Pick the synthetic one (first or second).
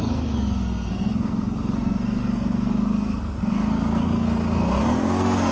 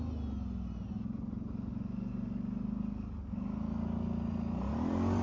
first